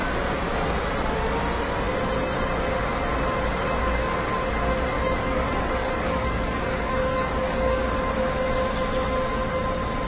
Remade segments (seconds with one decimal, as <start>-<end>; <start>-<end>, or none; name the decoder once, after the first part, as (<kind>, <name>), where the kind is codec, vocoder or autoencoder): 4.9-7.8 (codec, DAC)